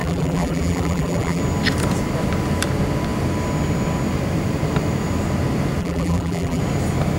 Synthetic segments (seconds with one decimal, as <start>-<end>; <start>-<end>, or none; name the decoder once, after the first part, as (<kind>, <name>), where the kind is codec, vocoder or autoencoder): 0.0-1.4 (vocoder, BigVGAN v2); 5.8-6.6